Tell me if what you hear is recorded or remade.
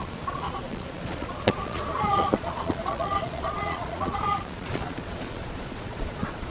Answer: remade